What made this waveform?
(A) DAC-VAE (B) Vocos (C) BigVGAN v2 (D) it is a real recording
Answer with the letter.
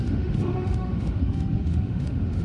A